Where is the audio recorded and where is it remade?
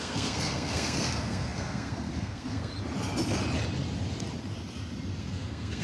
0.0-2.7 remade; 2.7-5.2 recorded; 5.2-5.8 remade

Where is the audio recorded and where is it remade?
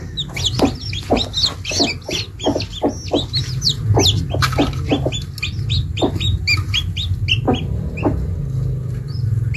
0.0-9.6 recorded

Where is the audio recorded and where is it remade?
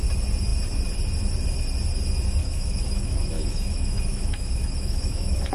0.0-2.4 recorded; 2.4-5.5 remade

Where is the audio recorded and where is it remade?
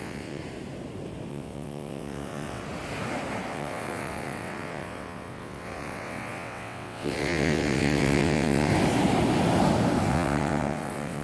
0.0-0.4 remade; 0.4-1.3 recorded; 1.3-2.6 remade; 2.6-3.5 recorded; 3.5-8.7 remade; 8.7-10.1 recorded; 10.1-11.2 remade